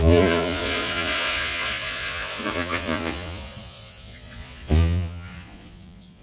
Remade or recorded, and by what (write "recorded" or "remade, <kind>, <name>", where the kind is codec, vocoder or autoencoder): remade, vocoder, Vocos